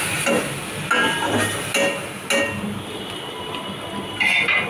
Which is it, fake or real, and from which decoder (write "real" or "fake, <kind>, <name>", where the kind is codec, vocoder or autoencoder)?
real